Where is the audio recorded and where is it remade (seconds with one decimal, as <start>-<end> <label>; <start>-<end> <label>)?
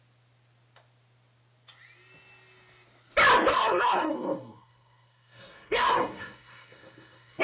0.0-3.5 recorded; 3.5-7.4 remade